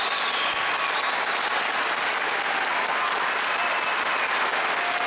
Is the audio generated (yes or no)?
no